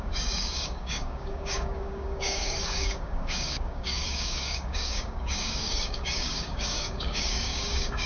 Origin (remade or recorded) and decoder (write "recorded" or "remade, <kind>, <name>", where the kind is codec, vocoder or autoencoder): remade, codec, DAC